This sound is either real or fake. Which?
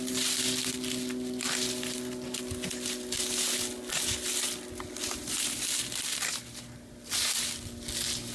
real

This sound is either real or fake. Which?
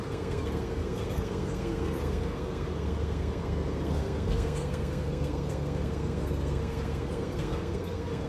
fake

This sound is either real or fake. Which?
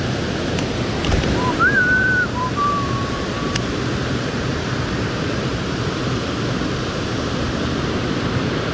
fake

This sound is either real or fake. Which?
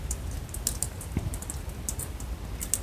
real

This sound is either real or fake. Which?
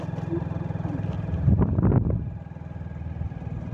real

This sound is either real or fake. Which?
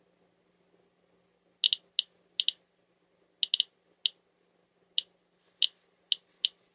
real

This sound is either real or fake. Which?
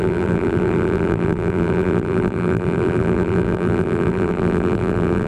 fake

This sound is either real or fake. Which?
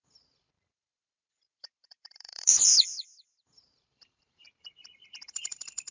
fake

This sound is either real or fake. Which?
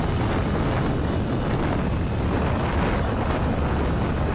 real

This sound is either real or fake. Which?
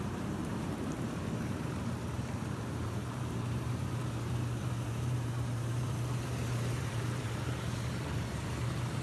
fake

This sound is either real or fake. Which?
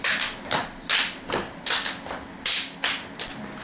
real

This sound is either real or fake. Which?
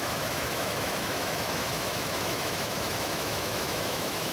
fake